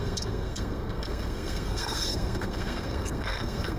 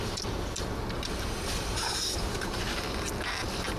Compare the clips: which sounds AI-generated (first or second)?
first